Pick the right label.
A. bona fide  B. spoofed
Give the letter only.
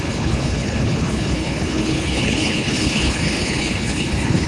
B